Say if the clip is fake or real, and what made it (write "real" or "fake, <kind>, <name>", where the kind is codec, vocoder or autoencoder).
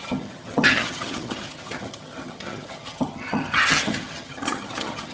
fake, vocoder, HiFi-GAN